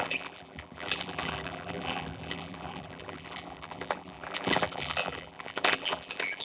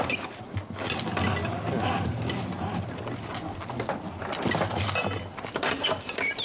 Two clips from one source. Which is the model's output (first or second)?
first